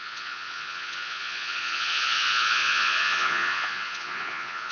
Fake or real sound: fake